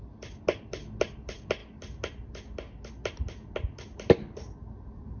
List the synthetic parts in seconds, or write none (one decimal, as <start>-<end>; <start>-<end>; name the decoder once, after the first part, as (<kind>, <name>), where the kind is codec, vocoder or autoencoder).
none

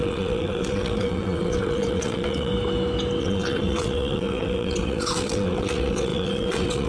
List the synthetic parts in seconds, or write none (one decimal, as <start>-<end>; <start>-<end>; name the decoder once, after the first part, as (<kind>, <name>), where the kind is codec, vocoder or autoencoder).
0.0-2.5 (vocoder, WaveNeXt); 3.2-6.9

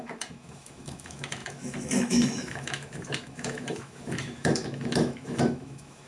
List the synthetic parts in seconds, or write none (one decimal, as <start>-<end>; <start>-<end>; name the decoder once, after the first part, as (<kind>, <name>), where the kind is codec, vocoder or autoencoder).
0.0-6.1 (autoencoder, DAC-VAE)

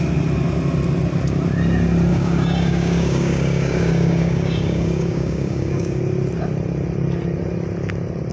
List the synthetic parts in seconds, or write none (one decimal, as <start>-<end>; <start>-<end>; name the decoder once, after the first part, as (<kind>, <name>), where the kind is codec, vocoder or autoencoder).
2.1-6.0 (codec, DAC)

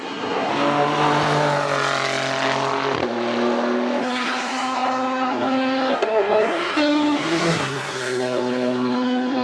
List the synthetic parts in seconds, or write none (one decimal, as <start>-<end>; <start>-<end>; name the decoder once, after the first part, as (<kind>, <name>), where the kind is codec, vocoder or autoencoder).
0.0-0.5 (codec, SNAC); 4.0-9.4

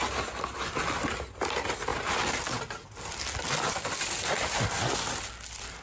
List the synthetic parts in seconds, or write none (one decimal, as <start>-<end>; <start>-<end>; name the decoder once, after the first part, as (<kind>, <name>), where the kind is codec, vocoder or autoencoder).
none